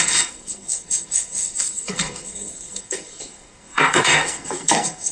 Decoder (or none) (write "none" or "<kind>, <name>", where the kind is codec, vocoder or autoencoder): codec, SNAC